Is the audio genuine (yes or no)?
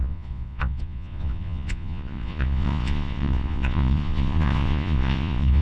no